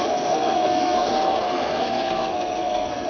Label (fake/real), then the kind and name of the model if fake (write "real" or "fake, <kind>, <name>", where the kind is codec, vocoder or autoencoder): fake, codec, SNAC